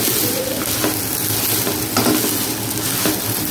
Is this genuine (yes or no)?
yes